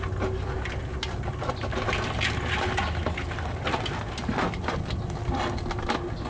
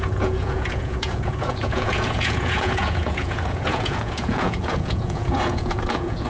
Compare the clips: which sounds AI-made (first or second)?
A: second